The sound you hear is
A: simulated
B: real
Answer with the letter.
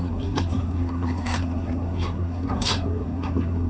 A